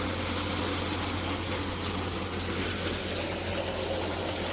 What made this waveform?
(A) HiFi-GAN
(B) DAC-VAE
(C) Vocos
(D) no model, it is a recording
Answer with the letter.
D